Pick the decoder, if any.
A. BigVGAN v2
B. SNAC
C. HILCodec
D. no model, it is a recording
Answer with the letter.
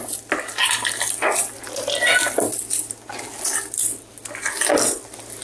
D